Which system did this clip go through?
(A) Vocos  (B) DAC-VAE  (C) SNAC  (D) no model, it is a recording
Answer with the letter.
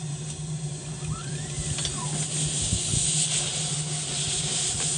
D